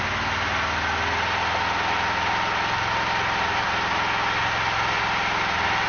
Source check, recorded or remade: recorded